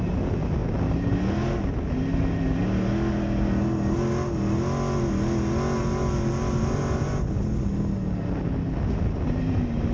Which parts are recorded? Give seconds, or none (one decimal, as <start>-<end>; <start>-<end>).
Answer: 0.0-9.9